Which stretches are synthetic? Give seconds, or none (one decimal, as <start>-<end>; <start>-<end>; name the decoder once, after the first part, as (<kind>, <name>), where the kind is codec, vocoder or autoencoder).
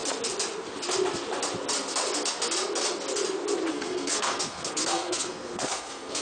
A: 3.7-6.2 (codec, SNAC)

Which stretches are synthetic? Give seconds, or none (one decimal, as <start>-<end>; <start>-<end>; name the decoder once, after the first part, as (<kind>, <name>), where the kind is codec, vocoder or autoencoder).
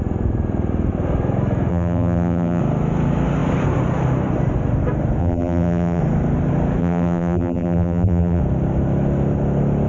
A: 1.7-2.6 (vocoder, BigVGAN v2); 5.2-6.0; 6.8-8.4